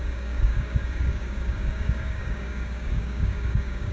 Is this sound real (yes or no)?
no